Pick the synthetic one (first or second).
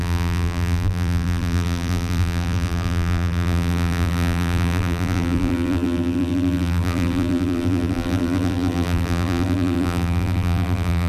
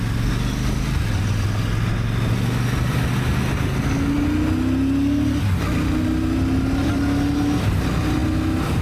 first